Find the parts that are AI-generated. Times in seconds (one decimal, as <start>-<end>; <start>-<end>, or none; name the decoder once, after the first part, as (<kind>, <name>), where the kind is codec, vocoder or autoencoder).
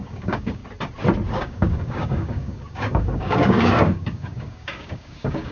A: 0.0-0.6 (codec, DAC); 1.3-5.5